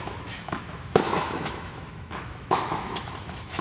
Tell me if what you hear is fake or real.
fake